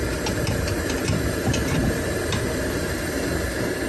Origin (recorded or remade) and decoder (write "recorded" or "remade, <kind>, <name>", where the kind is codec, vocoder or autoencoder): remade, vocoder, BigVGAN v2